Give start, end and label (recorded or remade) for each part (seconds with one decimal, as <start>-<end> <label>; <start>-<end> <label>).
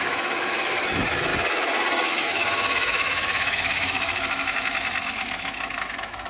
0.0-1.3 remade; 1.3-2.1 recorded; 2.1-6.3 remade